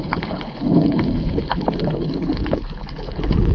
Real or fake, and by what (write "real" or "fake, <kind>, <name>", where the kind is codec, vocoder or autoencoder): fake, codec, HILCodec